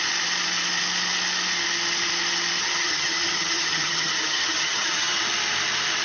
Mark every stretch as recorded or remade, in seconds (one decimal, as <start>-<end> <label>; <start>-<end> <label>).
0.0-2.6 recorded; 2.6-5.2 remade; 5.2-6.0 recorded

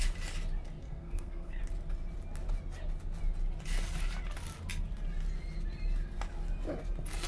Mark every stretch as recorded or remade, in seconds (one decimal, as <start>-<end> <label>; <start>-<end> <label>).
0.0-0.8 recorded; 0.8-1.6 remade; 1.6-7.3 recorded

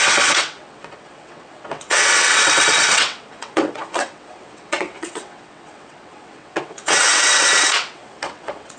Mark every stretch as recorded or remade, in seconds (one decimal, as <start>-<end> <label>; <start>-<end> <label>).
0.0-8.8 remade

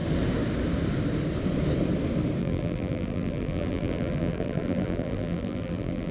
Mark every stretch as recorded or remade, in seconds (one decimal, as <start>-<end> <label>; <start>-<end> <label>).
0.0-2.4 recorded; 2.4-6.1 remade

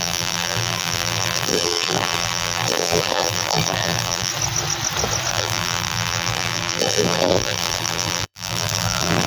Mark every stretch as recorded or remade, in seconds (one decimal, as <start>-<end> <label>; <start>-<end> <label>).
0.0-4.3 remade; 4.3-5.3 recorded; 5.3-9.3 remade